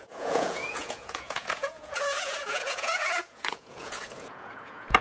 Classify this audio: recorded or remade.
remade